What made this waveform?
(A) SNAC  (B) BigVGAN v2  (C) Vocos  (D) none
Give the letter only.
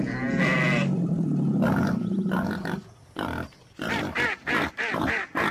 D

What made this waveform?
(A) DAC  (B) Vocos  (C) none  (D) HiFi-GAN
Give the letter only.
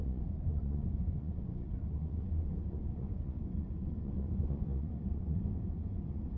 B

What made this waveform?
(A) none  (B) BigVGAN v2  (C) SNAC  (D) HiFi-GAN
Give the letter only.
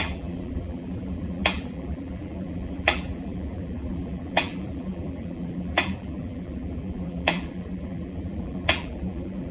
B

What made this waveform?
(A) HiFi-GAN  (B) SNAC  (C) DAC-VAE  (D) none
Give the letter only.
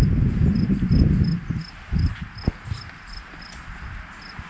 D